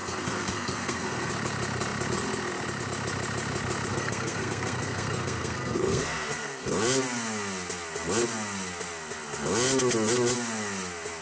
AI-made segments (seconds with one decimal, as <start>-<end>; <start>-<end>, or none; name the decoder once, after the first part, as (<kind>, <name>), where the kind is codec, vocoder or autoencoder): 0.0-1.3 (codec, SNAC); 3.9-6.7